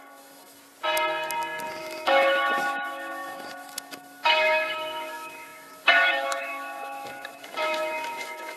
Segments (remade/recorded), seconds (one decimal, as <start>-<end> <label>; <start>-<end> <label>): 0.0-0.6 remade; 0.6-1.8 recorded; 1.8-8.6 remade